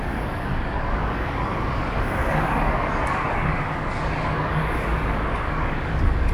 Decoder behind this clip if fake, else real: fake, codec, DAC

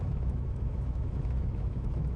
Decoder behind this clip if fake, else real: fake, autoencoder, DAC-VAE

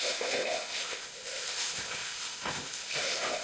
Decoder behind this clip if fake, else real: fake, codec, ZipCodec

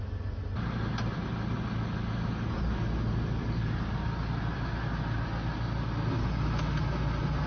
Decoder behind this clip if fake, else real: real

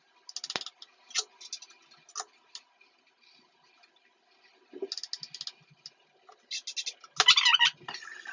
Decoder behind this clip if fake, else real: real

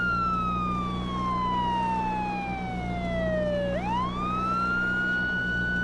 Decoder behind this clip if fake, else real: real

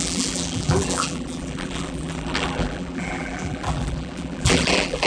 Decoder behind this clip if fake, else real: fake, vocoder, BigVGAN v2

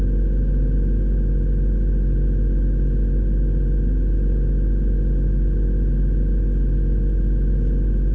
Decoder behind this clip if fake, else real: real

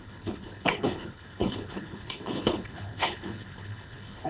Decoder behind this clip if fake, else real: fake, codec, HILCodec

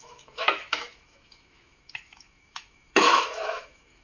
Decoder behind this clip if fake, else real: fake, autoencoder, DAC-VAE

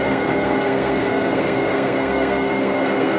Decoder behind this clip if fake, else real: fake, codec, SNAC